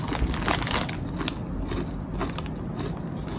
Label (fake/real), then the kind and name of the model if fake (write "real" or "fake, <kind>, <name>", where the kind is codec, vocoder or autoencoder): real